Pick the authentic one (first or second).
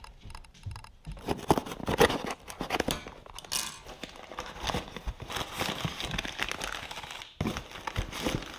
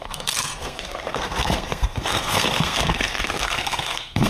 first